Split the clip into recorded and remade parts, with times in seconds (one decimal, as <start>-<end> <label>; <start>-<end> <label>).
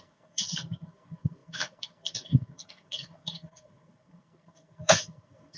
0.0-5.6 remade